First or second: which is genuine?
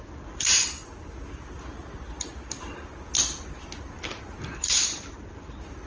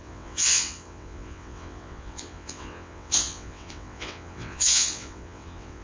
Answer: first